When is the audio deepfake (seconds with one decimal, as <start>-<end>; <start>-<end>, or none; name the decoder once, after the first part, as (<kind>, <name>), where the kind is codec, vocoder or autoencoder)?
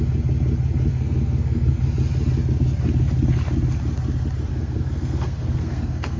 0.9-1.8 (codec, SNAC); 4.5-6.2